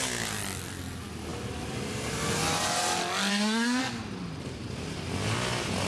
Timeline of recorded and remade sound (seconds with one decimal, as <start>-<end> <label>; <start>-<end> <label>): 0.0-3.3 recorded; 3.3-3.8 remade; 3.8-5.9 recorded